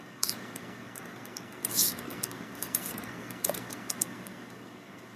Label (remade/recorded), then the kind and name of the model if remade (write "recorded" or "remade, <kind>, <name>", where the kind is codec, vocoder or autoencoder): remade, codec, SNAC